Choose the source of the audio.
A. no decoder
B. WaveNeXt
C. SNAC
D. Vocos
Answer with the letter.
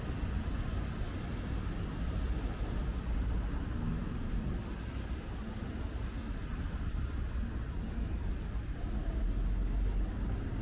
A